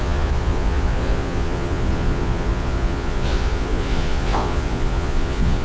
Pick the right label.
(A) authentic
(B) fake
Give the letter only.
B